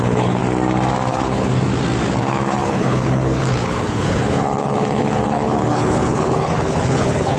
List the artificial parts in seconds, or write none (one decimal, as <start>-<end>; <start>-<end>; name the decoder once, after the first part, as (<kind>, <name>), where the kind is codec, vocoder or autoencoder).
0.0-0.4 (codec, HILCodec); 1.1-1.5; 2.2-7.4